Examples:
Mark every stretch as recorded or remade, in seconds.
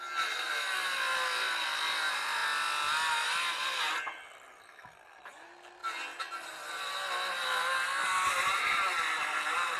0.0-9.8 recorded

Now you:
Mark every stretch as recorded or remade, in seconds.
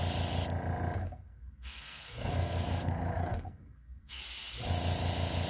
0.0-1.0 recorded; 1.0-4.2 remade; 4.2-5.5 recorded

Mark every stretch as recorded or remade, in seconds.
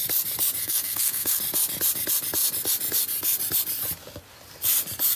0.0-0.6 recorded; 0.6-1.4 remade; 1.4-5.2 recorded